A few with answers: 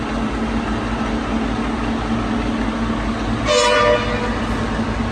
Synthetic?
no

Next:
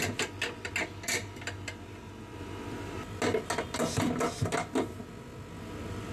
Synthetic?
no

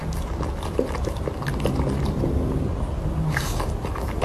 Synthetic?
no